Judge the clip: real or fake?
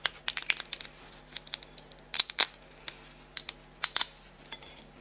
real